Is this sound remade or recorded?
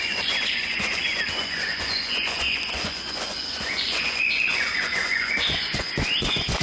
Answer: remade